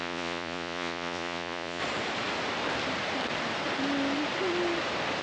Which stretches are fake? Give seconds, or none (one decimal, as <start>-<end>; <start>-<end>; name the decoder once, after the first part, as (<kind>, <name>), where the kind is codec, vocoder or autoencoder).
0.0-1.8 (vocoder, Vocos)